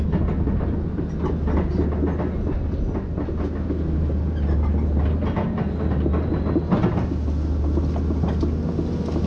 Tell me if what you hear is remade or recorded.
recorded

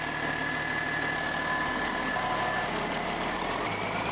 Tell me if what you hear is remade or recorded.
recorded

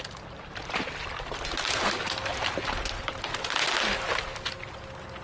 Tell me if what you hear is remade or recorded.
recorded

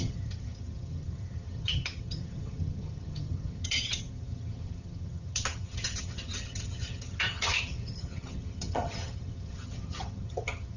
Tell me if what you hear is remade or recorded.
remade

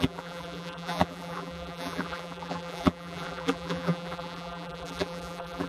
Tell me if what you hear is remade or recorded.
remade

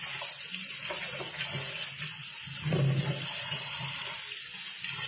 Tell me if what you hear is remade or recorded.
recorded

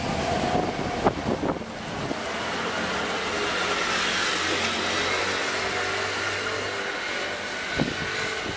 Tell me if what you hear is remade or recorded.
recorded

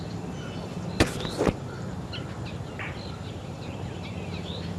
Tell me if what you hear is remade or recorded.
recorded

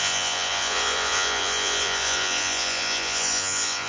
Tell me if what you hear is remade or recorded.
remade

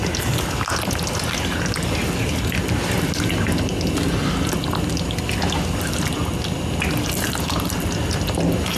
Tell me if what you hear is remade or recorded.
recorded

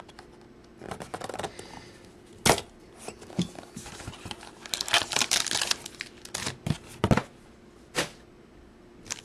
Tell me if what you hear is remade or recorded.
recorded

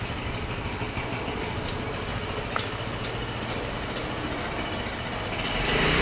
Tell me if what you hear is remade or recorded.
recorded